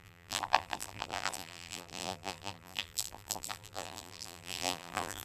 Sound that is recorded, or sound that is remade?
remade